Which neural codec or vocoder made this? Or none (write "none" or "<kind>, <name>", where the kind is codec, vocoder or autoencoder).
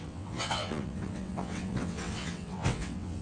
vocoder, WaveNeXt